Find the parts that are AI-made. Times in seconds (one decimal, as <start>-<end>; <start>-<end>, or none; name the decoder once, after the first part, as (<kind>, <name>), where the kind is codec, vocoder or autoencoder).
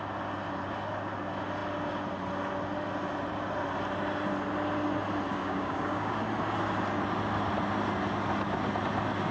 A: 5.3-6.2 (codec, DAC)